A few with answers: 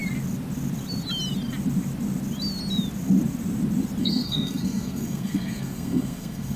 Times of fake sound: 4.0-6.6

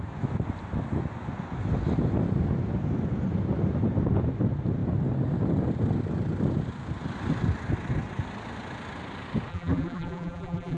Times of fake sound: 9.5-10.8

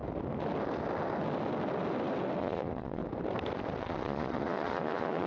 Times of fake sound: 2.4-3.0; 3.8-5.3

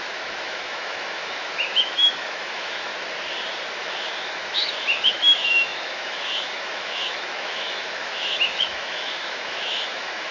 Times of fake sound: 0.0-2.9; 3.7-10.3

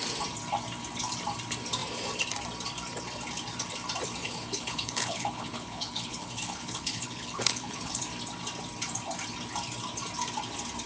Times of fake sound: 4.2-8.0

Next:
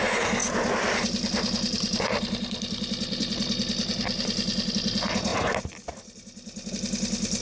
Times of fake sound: none

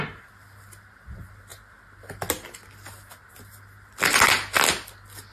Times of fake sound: none